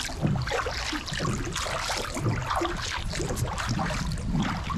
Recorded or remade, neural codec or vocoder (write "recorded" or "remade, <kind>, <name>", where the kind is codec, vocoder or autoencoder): recorded